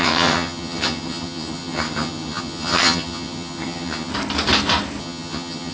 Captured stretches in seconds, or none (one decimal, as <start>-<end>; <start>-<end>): 4.1-5.0